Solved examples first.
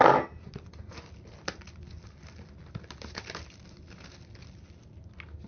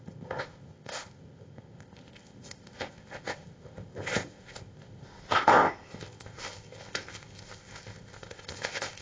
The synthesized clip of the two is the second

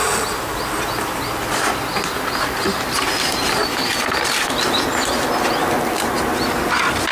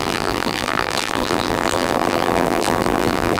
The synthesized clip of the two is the second